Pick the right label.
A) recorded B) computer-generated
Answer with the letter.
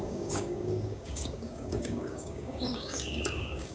B